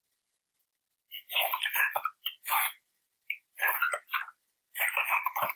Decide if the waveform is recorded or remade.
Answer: recorded